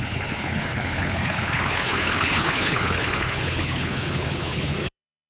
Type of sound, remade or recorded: remade